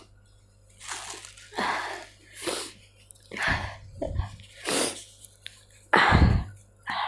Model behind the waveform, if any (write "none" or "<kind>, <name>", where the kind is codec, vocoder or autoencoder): none